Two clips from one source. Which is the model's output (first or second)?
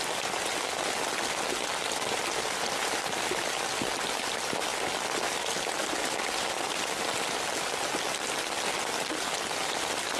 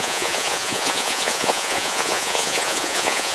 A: second